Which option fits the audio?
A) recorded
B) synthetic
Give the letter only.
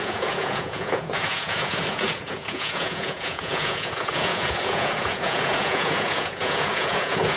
B